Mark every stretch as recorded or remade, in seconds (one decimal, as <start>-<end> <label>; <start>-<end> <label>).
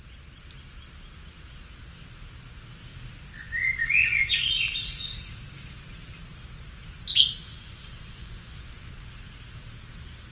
0.0-3.6 recorded; 3.6-4.5 remade; 4.5-7.4 recorded; 7.4-9.1 remade; 9.1-10.3 recorded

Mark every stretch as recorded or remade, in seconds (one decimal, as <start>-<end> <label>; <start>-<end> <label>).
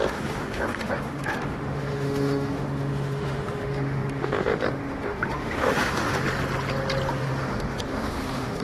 0.0-6.2 remade; 6.2-7.1 recorded; 7.1-8.6 remade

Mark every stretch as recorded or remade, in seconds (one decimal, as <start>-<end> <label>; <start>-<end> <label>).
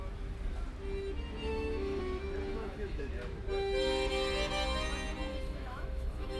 0.0-1.5 recorded; 1.5-2.0 remade; 2.0-2.5 recorded; 2.5-3.0 remade; 3.0-5.3 recorded; 5.3-6.4 remade